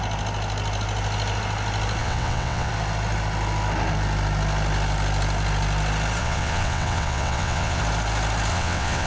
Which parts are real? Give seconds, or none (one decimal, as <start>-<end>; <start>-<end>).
0.0-2.0; 2.7-6.2; 7.8-8.5